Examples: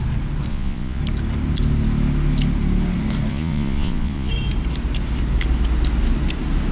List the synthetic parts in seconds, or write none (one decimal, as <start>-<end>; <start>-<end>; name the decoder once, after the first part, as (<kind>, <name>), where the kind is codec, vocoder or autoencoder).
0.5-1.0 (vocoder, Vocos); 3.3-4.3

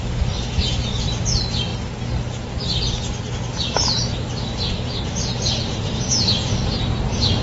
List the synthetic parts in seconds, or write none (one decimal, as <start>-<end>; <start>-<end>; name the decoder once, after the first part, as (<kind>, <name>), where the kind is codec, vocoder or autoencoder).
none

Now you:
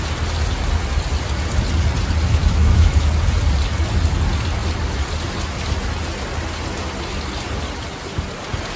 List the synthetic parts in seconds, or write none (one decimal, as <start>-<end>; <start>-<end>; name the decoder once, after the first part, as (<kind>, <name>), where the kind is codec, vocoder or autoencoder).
2.4-3.1 (autoencoder, DAC-VAE)

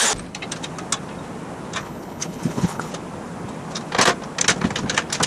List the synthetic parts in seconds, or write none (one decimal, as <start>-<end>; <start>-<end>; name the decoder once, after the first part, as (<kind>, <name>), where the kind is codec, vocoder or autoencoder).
1.8-2.9 (codec, HILCodec)

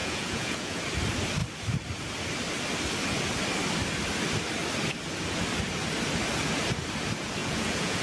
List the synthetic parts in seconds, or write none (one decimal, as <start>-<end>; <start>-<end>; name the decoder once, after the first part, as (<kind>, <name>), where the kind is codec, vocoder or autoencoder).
0.0-0.8 (vocoder, Vocos); 7.4-8.0

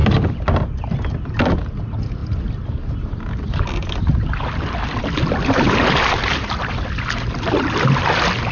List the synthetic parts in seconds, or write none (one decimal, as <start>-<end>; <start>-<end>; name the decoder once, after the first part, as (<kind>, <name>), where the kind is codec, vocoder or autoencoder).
none